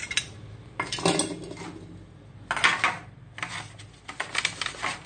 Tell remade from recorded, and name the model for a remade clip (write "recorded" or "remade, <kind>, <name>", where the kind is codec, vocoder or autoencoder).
recorded